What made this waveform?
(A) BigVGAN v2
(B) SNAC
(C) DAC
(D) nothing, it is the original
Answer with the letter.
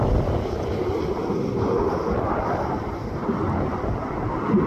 D